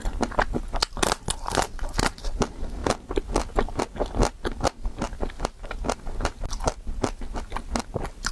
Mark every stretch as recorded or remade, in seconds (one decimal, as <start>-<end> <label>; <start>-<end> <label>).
0.0-8.3 recorded